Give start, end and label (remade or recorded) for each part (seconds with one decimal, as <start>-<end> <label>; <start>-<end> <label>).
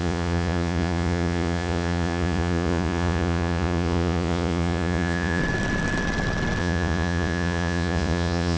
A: 0.0-5.4 remade; 5.4-6.6 recorded; 6.6-8.6 remade